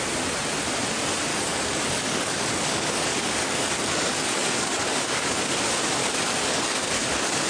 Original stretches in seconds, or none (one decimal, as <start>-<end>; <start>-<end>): 0.0-1.3; 5.5-6.0